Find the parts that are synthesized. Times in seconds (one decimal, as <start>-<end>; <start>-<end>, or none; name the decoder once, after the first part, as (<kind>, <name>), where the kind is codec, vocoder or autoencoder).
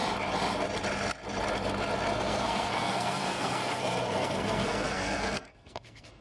2.2-6.2 (codec, SNAC)